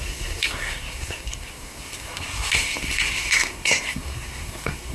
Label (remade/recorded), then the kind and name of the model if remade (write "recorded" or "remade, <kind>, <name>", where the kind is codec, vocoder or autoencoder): remade, codec, SNAC